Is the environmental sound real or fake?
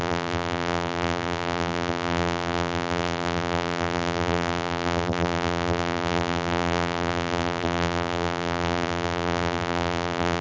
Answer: fake